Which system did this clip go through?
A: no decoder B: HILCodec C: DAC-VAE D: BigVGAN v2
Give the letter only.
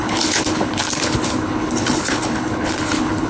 B